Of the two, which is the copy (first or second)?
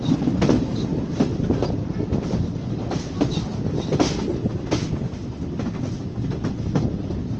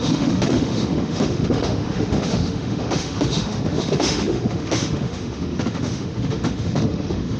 second